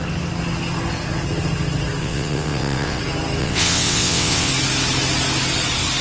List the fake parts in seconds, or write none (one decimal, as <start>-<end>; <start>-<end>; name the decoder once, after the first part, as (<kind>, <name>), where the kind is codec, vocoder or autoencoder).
2.0-3.0 (vocoder, WaveNeXt); 3.4-4.5